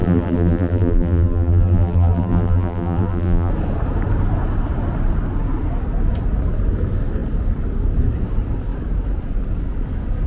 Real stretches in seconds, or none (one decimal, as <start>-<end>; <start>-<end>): 3.5-10.3